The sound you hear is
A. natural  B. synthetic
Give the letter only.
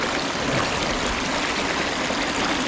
A